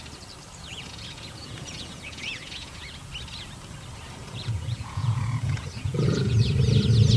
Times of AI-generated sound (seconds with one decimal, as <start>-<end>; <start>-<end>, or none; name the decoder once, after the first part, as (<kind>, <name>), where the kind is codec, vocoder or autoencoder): 0.7-3.1 (vocoder, Vocos); 4.2-6.4